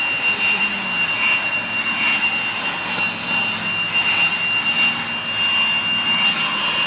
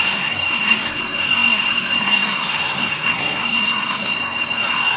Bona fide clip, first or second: first